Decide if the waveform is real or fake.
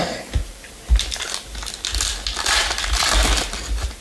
real